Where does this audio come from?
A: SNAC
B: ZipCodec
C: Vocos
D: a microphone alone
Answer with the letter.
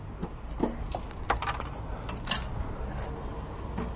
D